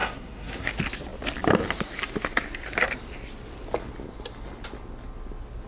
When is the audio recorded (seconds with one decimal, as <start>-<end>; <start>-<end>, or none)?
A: 0.7-5.7